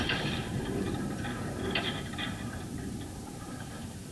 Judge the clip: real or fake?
fake